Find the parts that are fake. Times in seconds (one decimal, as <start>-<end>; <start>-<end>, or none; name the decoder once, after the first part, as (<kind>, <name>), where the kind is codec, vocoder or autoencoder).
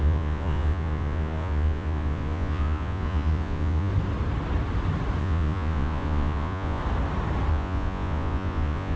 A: 0.0-3.9 (vocoder, Vocos); 5.2-6.8; 7.5-9.0